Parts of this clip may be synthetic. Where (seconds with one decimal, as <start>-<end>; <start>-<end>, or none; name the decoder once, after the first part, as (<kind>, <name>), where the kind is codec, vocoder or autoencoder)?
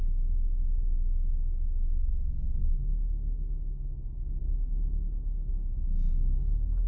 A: 2.6-3.6 (codec, DAC); 4.4-6.9